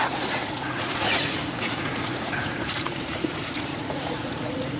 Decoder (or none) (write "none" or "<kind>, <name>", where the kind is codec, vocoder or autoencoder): vocoder, Vocos